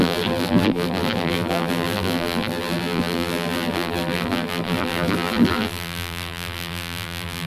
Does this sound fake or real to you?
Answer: fake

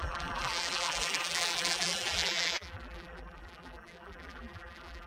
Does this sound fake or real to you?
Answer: fake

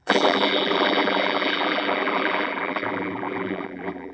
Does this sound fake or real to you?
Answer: fake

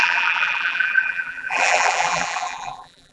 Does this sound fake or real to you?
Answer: fake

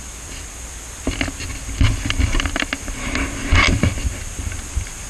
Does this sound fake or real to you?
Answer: real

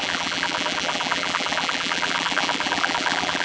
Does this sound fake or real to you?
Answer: fake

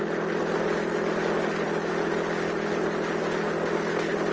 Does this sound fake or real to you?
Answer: real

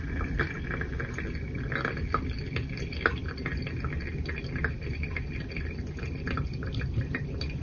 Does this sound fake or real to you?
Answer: real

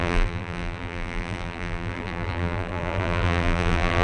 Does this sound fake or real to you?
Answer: fake